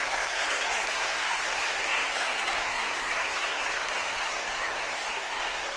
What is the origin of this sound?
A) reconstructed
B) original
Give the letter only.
A